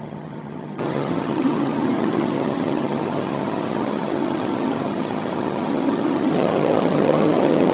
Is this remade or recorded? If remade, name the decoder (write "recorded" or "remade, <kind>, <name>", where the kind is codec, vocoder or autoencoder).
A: remade, vocoder, HiFi-GAN